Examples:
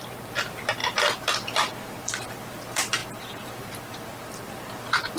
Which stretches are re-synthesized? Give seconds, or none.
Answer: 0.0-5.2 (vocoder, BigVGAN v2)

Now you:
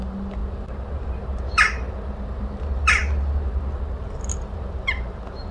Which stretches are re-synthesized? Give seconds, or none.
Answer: none

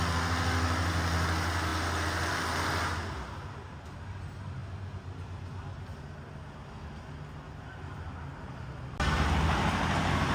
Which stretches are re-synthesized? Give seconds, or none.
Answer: none

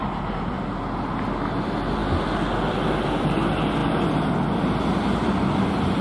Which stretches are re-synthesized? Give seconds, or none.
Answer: none

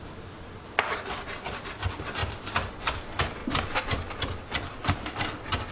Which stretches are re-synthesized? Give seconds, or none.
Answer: none

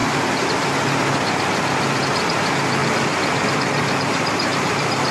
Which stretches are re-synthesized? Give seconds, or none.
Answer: 2.8-5.1 (vocoder, BigVGAN v2)

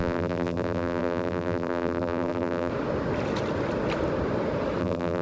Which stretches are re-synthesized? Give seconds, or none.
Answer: 0.0-2.7 (vocoder, BigVGAN v2); 4.8-5.2